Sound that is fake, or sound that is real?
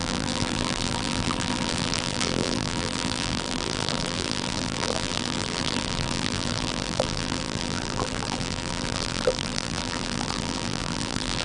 fake